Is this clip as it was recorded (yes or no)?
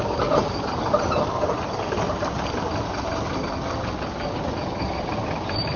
yes